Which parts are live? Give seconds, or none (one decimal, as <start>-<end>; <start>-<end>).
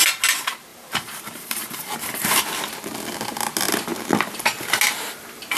0.0-0.7; 1.6-5.6